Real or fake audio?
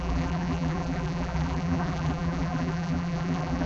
fake